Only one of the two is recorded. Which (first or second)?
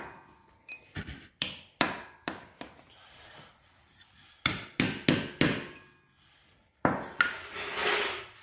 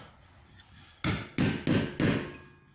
second